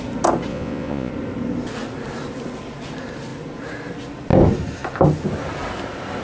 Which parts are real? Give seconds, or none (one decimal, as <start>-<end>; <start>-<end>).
0.0-0.5; 1.1-6.2